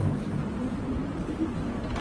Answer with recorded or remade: recorded